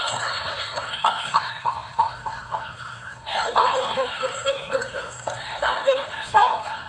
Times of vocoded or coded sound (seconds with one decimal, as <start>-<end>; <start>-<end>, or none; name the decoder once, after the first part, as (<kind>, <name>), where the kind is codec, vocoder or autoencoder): 0.0-6.9 (codec, SNAC)